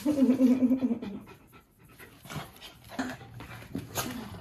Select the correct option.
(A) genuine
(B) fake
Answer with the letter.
A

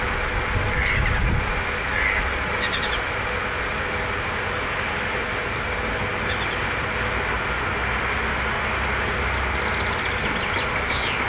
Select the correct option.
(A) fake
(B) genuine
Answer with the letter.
B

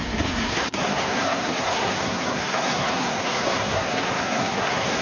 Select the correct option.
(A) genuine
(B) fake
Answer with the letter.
B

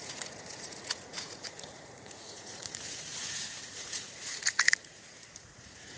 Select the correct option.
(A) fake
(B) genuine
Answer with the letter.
A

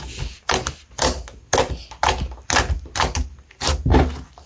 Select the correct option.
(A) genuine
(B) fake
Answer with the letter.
A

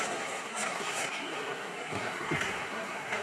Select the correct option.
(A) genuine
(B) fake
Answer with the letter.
B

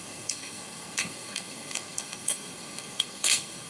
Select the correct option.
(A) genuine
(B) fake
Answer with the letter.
B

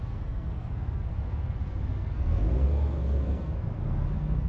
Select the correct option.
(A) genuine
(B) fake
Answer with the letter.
B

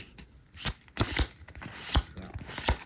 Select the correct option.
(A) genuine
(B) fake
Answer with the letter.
A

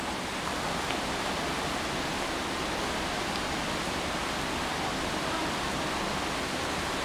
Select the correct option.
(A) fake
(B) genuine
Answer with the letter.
B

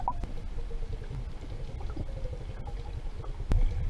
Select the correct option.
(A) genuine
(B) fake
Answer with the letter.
A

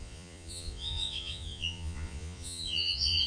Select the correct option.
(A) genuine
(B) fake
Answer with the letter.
B